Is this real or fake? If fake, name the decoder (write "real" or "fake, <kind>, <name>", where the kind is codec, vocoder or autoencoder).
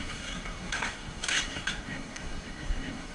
fake, codec, SNAC